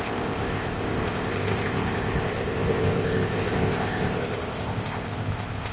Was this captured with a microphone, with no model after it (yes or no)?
no